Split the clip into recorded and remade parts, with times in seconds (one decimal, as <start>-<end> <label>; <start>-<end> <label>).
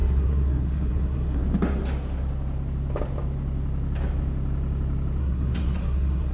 0.0-1.4 remade; 1.4-5.2 recorded; 5.2-6.3 remade